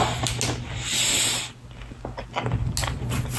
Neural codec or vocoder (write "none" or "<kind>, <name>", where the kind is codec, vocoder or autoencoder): none